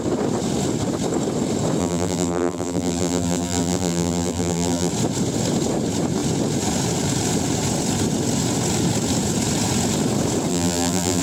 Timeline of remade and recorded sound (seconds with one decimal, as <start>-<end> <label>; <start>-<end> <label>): 0.0-1.8 recorded; 1.8-4.9 remade; 4.9-10.5 recorded; 10.5-11.2 remade